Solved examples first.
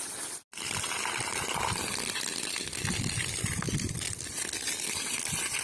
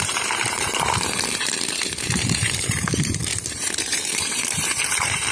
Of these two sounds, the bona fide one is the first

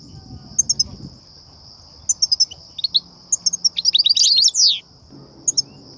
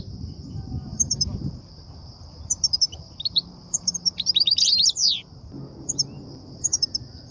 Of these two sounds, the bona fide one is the first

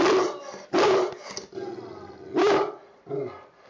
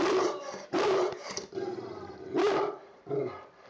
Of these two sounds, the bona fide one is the first